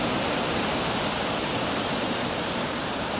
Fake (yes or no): yes